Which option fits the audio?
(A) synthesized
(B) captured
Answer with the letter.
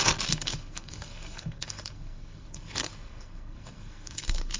A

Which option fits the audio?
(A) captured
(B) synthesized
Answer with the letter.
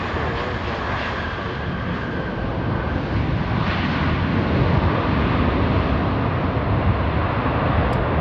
A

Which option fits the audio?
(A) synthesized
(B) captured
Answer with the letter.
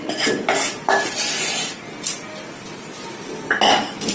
B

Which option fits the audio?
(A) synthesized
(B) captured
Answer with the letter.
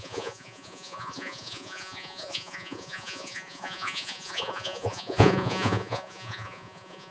A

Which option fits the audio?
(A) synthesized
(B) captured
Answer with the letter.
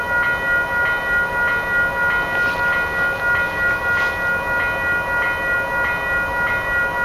B